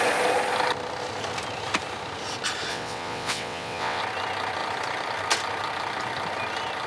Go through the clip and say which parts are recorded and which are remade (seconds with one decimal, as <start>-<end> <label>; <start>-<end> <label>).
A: 0.0-2.7 recorded; 2.7-4.0 remade; 4.0-6.9 recorded